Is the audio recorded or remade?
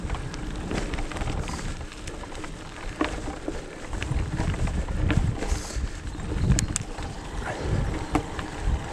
recorded